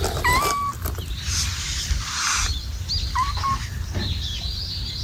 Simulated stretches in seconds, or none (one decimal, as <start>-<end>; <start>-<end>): none